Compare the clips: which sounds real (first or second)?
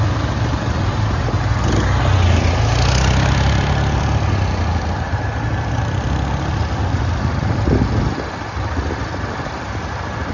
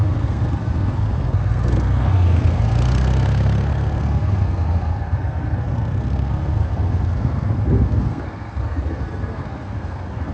first